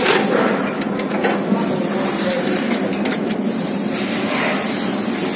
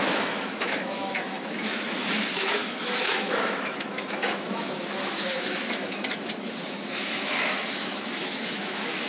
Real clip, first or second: first